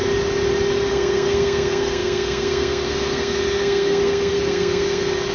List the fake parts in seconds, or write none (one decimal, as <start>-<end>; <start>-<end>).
0.9-5.3